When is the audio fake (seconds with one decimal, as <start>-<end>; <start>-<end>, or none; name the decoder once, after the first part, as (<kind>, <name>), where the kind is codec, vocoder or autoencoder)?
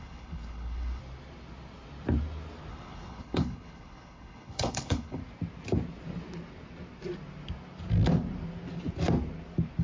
0.0-1.0 (codec, HILCodec); 2.7-5.2